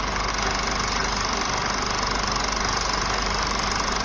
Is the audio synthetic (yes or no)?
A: no